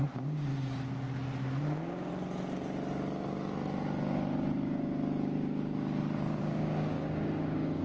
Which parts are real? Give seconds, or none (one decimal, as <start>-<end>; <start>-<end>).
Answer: 0.5-1.6; 2.1-6.4